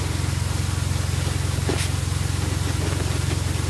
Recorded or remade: recorded